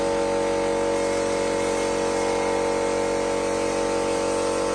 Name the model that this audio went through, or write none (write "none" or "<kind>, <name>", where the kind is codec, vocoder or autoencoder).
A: none